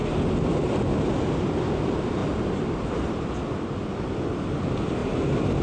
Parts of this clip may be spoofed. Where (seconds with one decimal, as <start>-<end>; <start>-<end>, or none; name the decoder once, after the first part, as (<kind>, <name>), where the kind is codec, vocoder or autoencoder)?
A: 2.2-3.0 (vocoder, BigVGAN v2)